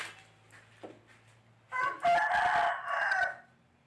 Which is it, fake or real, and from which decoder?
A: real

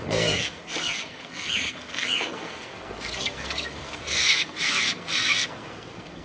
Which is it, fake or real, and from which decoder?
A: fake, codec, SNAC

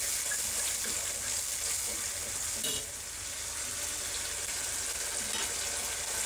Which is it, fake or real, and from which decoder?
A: real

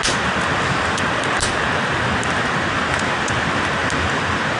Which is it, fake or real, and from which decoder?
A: real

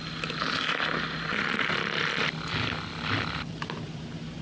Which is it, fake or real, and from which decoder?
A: real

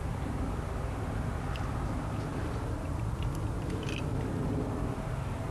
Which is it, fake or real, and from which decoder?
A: real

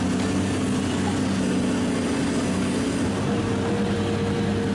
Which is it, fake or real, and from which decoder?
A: real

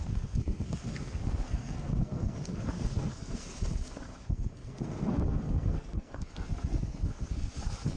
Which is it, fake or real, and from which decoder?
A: fake, codec, SNAC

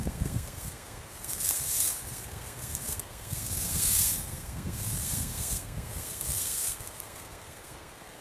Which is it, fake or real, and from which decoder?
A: fake, codec, SNAC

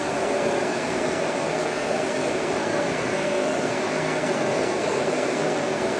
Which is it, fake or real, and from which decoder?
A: fake, codec, SNAC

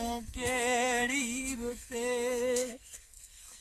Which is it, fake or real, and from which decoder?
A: fake, codec, SNAC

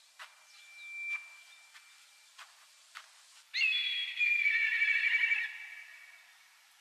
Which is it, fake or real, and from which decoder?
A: real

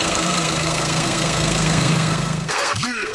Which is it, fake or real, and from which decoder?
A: fake, codec, SNAC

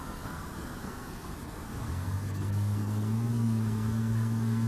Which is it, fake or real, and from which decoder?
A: fake, codec, SNAC